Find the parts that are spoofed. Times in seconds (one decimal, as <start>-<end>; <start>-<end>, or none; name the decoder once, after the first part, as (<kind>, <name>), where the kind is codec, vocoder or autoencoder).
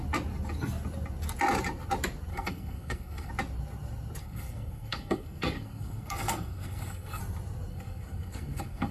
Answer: 2.3-3.3 (codec, SNAC); 4.2-7.2; 7.7-8.9